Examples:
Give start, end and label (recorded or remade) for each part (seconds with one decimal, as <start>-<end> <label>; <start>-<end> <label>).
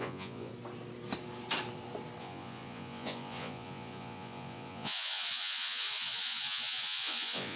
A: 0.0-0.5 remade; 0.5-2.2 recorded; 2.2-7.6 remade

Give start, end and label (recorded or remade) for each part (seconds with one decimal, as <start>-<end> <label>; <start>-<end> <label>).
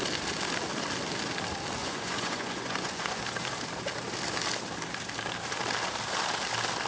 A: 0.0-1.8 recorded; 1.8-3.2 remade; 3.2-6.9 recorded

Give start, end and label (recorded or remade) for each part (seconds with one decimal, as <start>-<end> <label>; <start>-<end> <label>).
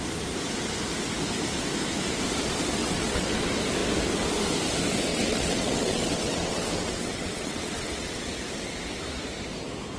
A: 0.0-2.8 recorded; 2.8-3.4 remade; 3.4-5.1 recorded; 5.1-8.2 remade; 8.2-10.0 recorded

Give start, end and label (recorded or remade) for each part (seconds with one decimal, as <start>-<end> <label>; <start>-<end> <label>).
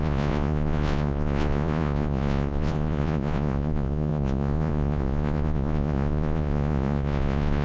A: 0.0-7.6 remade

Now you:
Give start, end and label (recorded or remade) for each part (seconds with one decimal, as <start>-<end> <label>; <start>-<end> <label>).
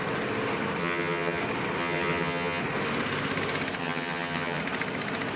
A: 0.0-0.8 recorded; 0.8-1.4 remade; 1.4-1.8 recorded; 1.8-2.6 remade; 2.6-3.8 recorded; 3.8-4.6 remade; 4.6-5.4 recorded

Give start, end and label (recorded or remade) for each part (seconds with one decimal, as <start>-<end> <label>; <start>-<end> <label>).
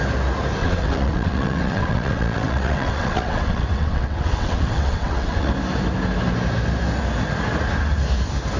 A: 0.0-0.6 recorded; 0.6-5.5 remade; 5.5-8.6 recorded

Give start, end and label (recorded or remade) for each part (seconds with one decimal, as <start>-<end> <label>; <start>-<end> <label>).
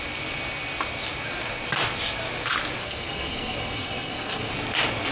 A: 0.0-2.8 recorded; 2.8-4.5 remade; 4.5-5.1 recorded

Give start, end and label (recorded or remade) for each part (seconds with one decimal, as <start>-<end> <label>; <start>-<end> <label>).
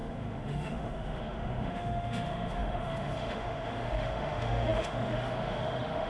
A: 0.0-6.1 remade